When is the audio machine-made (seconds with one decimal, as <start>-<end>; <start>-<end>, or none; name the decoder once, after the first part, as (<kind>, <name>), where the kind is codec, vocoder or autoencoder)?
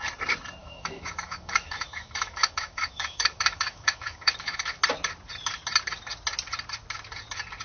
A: 0.6-4.8 (autoencoder, DAC-VAE)